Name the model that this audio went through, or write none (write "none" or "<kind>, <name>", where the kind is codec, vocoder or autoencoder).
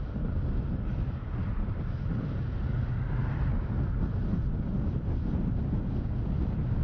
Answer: none